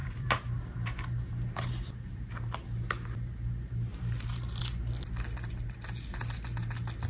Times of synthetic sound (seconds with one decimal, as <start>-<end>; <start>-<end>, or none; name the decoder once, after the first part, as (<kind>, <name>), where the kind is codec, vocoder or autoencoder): 0.0-2.3 (vocoder, BigVGAN v2); 3.9-4.6